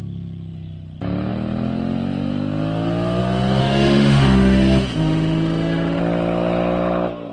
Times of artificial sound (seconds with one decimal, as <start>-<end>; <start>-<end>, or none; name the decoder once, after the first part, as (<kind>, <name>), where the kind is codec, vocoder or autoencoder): 3.6-6.0 (autoencoder, DAC-VAE)